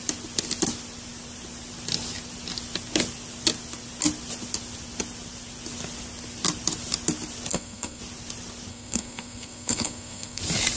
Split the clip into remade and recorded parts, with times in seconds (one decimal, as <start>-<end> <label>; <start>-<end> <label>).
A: 0.0-7.5 recorded; 7.5-8.0 remade; 8.0-8.7 recorded; 8.7-10.4 remade; 10.4-10.8 recorded